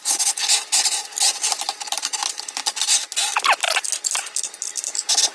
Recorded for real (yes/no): yes